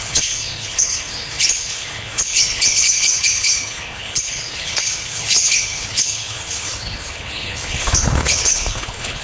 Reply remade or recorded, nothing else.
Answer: remade